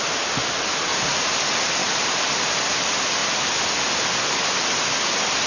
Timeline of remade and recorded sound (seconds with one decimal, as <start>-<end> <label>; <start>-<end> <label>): 0.0-0.9 recorded; 0.9-1.4 remade; 1.4-1.8 recorded; 1.8-2.6 remade; 2.6-5.5 recorded